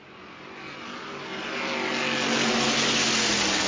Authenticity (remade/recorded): recorded